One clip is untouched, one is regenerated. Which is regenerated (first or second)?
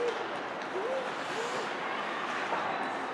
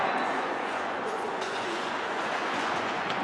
second